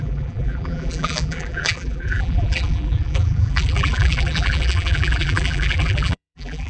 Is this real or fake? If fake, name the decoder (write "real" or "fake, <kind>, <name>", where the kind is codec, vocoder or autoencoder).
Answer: fake, vocoder, BigVGAN v2